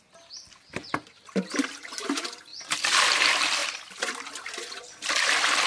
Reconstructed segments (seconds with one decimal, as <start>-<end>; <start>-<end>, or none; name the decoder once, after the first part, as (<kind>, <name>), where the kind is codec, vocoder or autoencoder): 0.0-2.5 (vocoder, BigVGAN v2); 3.0-5.7